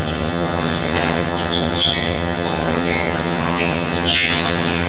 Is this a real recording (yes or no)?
no